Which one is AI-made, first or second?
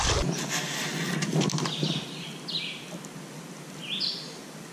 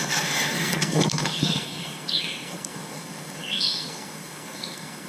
second